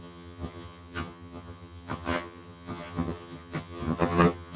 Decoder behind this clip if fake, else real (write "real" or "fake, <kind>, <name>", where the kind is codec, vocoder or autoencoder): fake, vocoder, HiFi-GAN